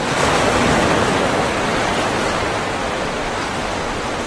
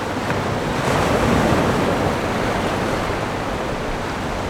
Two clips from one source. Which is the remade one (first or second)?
second